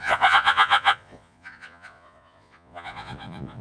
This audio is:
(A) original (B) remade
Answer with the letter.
B